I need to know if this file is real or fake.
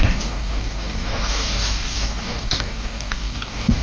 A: fake